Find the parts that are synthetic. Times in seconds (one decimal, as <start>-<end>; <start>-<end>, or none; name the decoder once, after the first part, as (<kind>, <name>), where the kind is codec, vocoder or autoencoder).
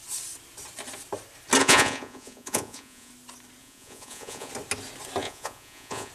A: 1.6-3.1 (vocoder, Vocos); 3.6-4.5; 5.2-6.1